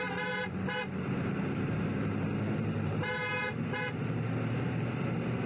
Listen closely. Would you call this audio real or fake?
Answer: fake